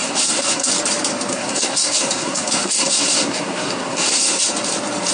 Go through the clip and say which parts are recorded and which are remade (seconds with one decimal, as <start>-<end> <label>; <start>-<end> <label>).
0.0-0.7 remade; 0.7-1.3 recorded; 1.3-4.4 remade; 4.4-5.1 recorded